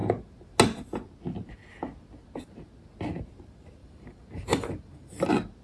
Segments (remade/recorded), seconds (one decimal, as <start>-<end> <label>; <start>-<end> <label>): 0.0-3.8 recorded; 3.8-5.1 remade; 5.1-5.6 recorded